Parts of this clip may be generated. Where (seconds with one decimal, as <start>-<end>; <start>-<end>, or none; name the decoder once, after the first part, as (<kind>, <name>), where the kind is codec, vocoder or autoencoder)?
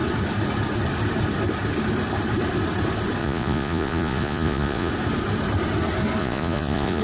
3.2-4.9 (vocoder, Vocos); 6.2-7.0